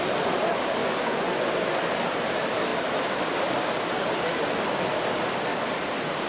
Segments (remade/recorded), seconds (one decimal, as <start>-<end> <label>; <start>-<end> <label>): 0.0-0.8 recorded; 0.8-1.5 remade; 1.5-6.3 recorded